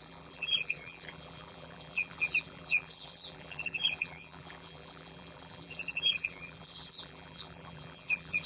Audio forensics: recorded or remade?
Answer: remade